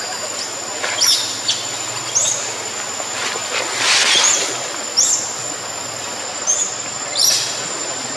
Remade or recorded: recorded